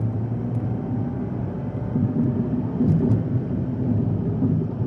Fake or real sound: real